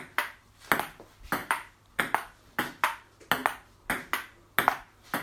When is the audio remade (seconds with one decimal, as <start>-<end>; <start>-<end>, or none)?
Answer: 1.4-2.0